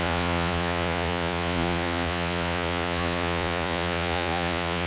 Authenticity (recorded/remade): remade